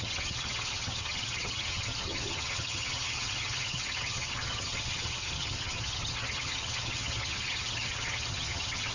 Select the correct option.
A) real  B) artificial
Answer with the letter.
B